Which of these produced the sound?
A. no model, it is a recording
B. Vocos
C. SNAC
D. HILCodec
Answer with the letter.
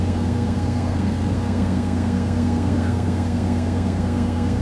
C